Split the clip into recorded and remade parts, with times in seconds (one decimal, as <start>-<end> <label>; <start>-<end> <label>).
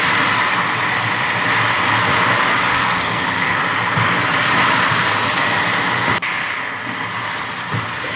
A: 0.0-2.7 recorded; 2.7-3.6 remade; 3.6-8.2 recorded